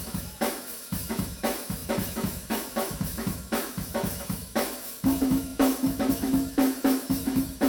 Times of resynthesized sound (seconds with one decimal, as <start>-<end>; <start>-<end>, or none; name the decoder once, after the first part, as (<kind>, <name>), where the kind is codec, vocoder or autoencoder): 0.0-7.7 (autoencoder, DAC-VAE)